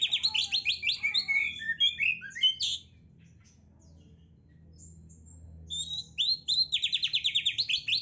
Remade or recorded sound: recorded